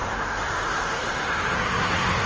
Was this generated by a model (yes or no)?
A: yes